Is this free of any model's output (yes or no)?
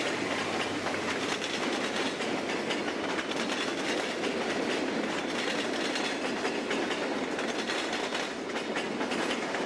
yes